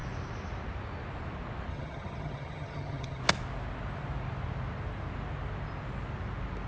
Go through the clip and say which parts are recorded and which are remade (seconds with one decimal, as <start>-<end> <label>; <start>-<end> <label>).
0.0-1.7 recorded; 1.7-3.2 remade; 3.2-6.7 recorded